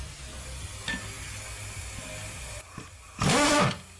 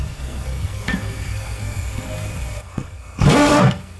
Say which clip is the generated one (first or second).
second